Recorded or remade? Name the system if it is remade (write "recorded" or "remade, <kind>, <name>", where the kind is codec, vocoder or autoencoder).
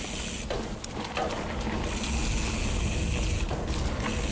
recorded